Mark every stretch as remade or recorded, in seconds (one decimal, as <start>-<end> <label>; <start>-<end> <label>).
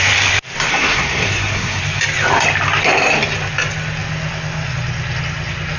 0.0-0.7 recorded; 0.7-1.8 remade; 1.8-5.8 recorded